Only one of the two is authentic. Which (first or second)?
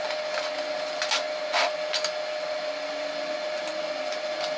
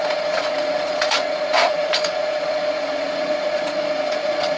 first